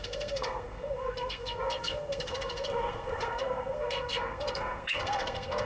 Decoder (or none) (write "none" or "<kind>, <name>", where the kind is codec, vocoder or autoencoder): codec, SNAC